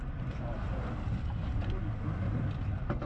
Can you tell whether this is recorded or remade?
recorded